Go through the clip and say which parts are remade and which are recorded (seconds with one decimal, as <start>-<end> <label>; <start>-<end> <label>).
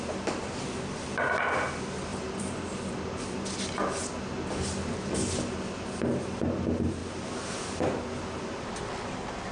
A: 0.0-2.1 recorded; 2.1-3.6 remade; 3.6-9.5 recorded